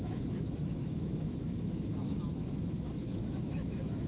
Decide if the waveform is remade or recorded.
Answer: remade